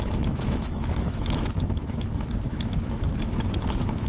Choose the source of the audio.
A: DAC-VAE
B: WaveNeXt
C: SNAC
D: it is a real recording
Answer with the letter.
A